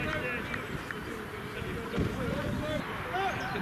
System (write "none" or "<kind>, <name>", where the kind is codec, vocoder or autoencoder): none